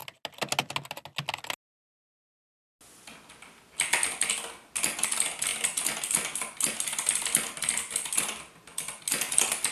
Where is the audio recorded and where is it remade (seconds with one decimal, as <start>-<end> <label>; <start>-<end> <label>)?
0.0-9.7 recorded